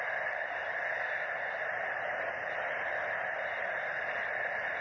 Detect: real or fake real